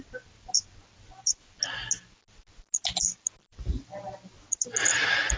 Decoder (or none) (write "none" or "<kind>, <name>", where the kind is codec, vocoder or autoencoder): none